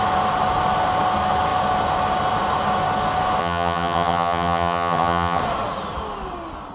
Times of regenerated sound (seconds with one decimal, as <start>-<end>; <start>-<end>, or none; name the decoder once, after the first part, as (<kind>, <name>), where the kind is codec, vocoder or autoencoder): 3.4-5.4 (vocoder, HiFi-GAN)